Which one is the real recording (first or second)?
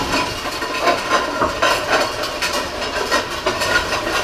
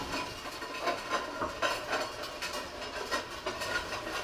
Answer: second